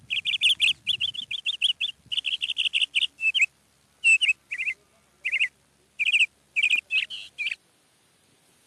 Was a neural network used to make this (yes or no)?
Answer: no